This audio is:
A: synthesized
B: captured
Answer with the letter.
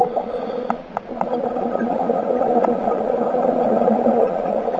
A